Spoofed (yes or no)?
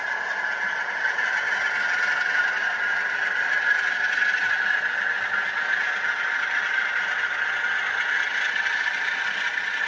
no